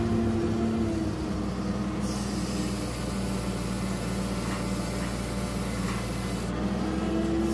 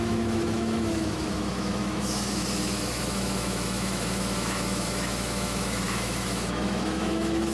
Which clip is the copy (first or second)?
second